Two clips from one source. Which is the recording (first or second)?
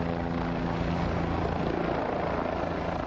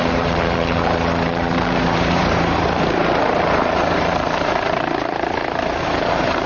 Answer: first